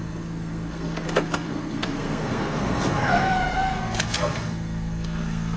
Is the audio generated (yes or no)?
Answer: yes